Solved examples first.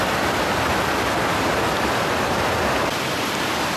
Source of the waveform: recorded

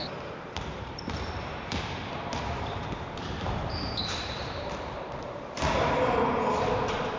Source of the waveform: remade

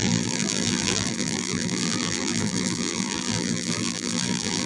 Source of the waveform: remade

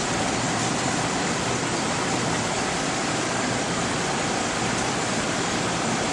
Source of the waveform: remade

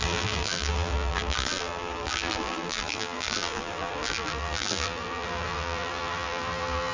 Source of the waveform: remade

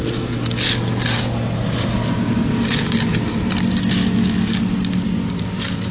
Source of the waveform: recorded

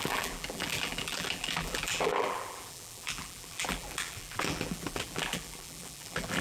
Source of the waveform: remade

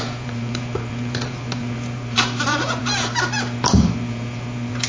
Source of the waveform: remade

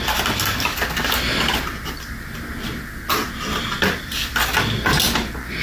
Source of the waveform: recorded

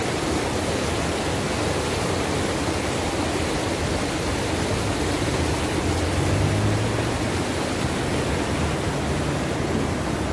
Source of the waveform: recorded